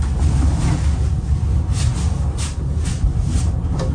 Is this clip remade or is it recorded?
recorded